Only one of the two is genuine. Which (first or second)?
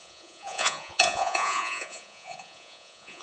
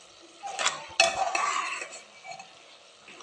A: second